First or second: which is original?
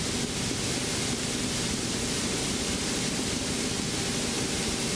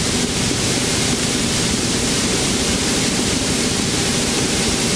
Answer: first